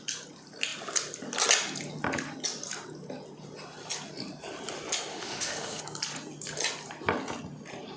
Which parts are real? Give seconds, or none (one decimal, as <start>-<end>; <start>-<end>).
0.0-5.1; 5.8-8.0